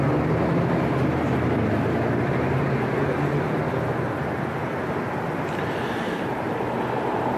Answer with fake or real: real